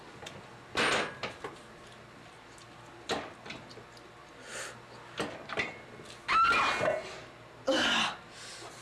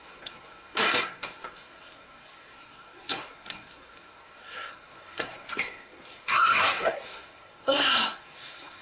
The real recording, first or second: first